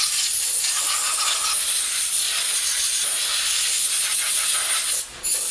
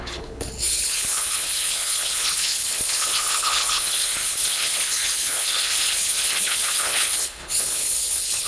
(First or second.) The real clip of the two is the first